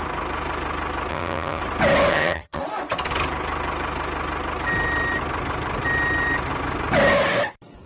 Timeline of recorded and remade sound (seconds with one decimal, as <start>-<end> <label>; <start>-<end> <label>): 0.0-1.1 recorded; 1.1-1.6 remade; 1.6-2.1 recorded; 2.1-2.6 remade; 2.6-7.9 recorded